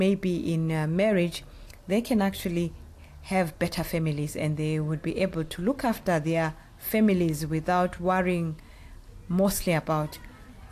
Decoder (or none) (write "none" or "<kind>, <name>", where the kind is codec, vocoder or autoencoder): none